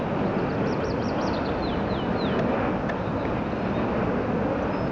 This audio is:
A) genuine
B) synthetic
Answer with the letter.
A